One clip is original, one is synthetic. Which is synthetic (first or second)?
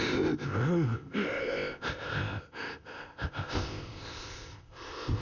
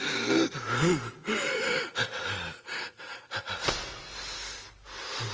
first